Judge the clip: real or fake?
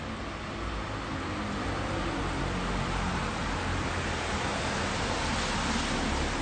real